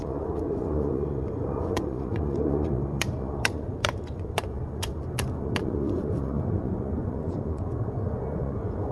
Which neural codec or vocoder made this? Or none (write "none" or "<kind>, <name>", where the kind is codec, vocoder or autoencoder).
vocoder, Vocos